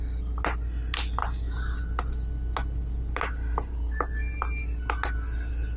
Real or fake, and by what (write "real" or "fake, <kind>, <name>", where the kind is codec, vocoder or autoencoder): real